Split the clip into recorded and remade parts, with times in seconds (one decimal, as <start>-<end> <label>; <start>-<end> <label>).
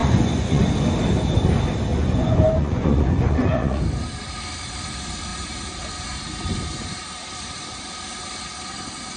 0.0-0.6 remade; 0.6-1.9 recorded; 1.9-3.8 remade; 3.8-9.2 recorded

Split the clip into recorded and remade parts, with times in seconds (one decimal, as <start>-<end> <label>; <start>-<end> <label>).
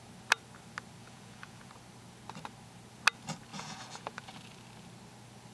0.0-1.0 recorded; 1.0-1.7 remade; 1.7-3.5 recorded; 3.5-4.4 remade; 4.4-5.5 recorded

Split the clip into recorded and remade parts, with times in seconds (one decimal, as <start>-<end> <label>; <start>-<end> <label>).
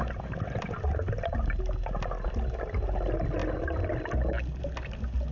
0.0-5.3 recorded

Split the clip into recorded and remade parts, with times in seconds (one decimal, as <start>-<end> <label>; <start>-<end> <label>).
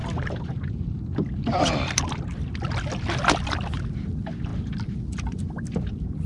0.0-4.5 remade; 4.5-5.1 recorded; 5.1-6.3 remade